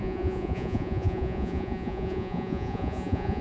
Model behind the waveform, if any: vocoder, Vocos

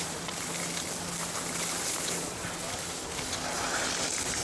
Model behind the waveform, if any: none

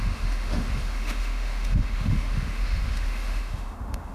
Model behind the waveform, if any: autoencoder, DAC-VAE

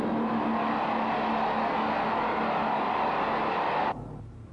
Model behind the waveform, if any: none